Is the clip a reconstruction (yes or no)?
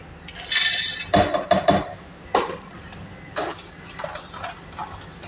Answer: no